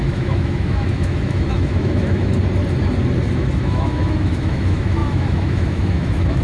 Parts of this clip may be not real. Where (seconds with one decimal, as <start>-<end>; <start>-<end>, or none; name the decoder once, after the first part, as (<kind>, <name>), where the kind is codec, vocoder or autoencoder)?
0.0-2.3 (autoencoder, DAC-VAE); 3.3-6.4